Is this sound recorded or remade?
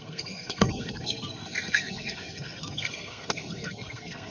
remade